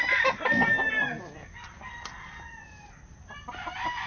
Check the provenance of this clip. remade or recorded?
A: recorded